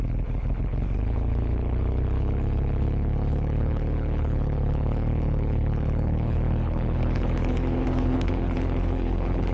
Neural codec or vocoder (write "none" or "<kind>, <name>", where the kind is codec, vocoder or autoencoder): codec, HILCodec